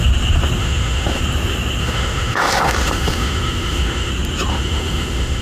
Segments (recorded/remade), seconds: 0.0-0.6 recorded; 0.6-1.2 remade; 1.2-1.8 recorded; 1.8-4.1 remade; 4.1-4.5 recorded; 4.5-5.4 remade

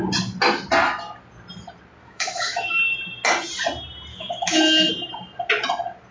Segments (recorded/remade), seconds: 0.0-2.0 recorded; 2.0-2.8 remade; 2.8-4.1 recorded; 4.1-4.9 remade; 4.9-6.1 recorded

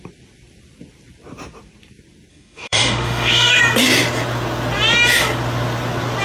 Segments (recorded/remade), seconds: 0.0-2.3 recorded; 2.3-3.6 remade; 3.6-6.2 recorded